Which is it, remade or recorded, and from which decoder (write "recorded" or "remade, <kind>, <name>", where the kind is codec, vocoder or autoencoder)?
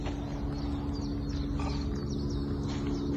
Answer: recorded